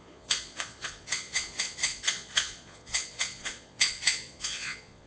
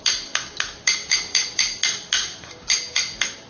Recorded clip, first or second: second